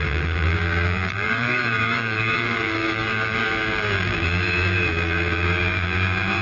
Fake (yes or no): yes